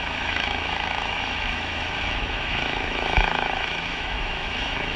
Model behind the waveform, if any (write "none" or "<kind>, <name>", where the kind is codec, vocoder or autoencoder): autoencoder, DAC-VAE